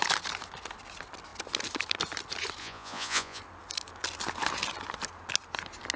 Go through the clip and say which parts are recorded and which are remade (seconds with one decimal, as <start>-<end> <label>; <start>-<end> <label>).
0.0-2.6 recorded; 2.6-3.4 remade; 3.4-6.0 recorded